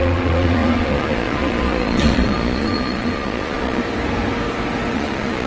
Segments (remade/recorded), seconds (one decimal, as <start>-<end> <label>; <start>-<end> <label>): 0.0-3.8 remade; 3.8-4.9 recorded; 4.9-5.5 remade